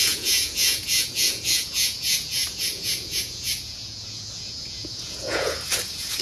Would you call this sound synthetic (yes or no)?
yes